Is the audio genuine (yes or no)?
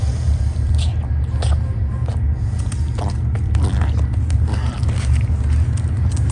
yes